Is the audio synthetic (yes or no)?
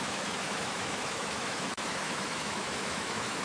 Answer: yes